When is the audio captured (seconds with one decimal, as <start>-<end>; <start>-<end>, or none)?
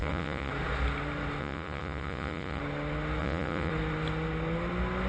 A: 0.5-1.4; 2.6-3.2; 3.7-5.1